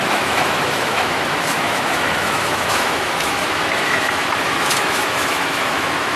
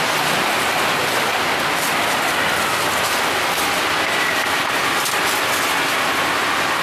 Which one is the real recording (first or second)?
second